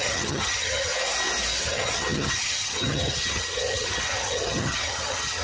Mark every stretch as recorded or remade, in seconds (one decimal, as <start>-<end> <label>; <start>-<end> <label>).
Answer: 0.0-0.9 remade; 0.9-1.6 recorded; 1.6-5.4 remade

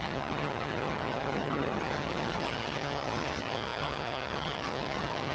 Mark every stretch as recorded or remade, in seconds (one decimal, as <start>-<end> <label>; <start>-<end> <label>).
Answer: 0.0-5.3 remade

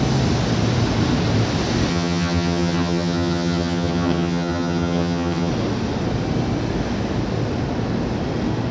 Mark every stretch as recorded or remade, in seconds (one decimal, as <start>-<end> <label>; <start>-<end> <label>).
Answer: 0.0-1.9 recorded; 1.9-5.5 remade; 5.5-8.7 recorded

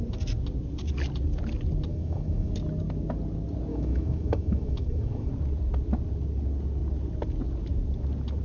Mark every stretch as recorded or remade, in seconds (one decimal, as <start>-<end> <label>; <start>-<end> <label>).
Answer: 0.0-1.9 recorded; 1.9-2.5 remade; 2.5-3.7 recorded; 3.7-5.3 remade; 5.3-8.4 recorded

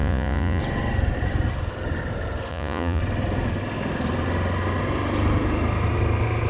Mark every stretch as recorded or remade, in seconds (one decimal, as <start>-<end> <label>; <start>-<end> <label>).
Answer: 0.0-0.6 remade; 0.6-2.5 recorded; 2.5-3.0 remade; 3.0-6.5 recorded

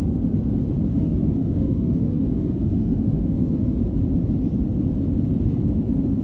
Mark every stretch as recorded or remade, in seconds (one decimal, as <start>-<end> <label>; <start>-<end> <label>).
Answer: 0.0-0.9 recorded; 0.9-3.8 remade; 3.8-6.2 recorded